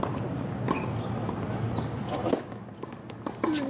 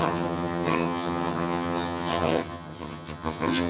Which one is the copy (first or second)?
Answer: second